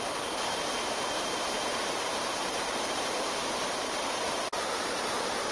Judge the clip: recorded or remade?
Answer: remade